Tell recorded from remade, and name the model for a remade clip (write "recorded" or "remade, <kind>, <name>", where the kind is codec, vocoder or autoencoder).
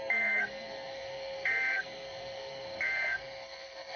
remade, codec, SNAC